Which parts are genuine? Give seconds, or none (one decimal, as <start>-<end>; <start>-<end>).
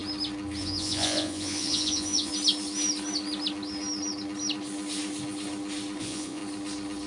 0.0-0.6; 2.3-6.0; 6.4-7.1